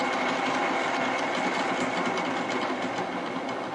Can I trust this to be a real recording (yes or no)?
yes